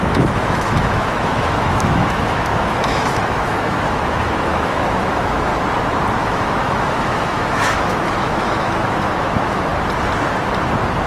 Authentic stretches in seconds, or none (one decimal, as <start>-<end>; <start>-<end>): 5.5-6.1; 9.7-11.1